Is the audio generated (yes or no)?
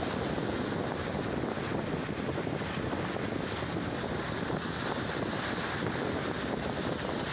no